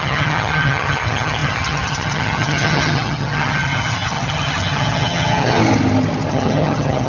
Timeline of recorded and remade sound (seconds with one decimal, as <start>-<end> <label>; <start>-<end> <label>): 0.0-5.6 remade; 5.6-6.3 recorded; 6.3-7.1 remade

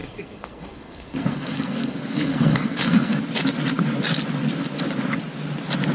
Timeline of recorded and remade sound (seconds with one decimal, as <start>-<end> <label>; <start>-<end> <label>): 0.0-3.2 remade; 3.2-5.9 recorded

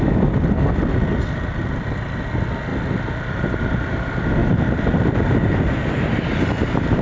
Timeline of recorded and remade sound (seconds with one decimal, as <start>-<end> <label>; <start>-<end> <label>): 0.0-2.7 recorded; 2.7-3.3 remade; 3.3-4.4 recorded; 4.4-5.1 remade; 5.1-7.0 recorded

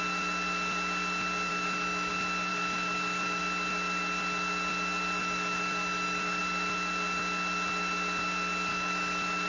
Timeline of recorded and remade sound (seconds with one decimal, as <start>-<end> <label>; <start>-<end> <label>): 0.0-1.5 recorded; 1.5-2.1 remade; 2.1-2.5 recorded; 2.5-3.4 remade; 3.4-5.2 recorded; 5.2-6.4 remade; 6.4-8.7 recorded; 8.7-9.5 remade

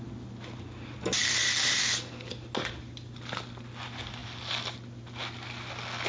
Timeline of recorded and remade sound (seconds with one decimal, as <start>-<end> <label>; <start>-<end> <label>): 0.0-6.1 recorded

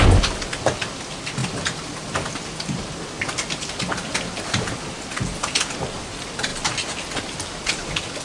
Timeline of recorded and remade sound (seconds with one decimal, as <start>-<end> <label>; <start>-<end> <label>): 0.0-8.2 recorded